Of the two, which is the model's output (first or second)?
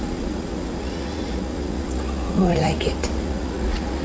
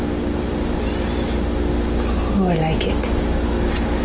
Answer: first